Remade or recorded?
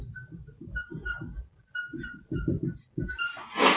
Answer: recorded